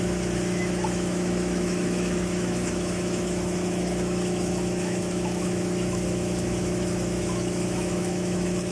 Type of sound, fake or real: fake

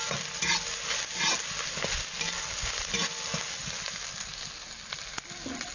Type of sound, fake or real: real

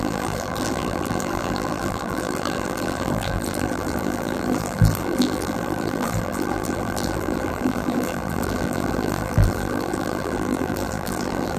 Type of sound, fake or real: fake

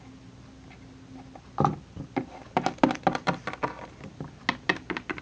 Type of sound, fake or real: real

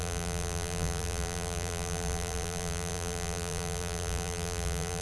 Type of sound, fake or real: fake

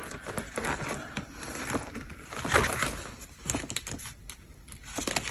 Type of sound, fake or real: real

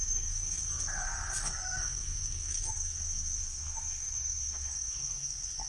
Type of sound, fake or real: fake